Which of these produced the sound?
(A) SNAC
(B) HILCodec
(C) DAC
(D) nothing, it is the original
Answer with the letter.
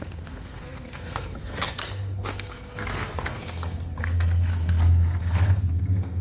A